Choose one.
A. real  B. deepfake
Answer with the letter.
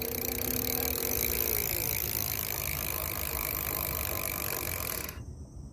A